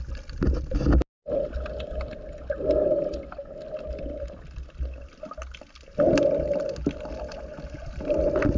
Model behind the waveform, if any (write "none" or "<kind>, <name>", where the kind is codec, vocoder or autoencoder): none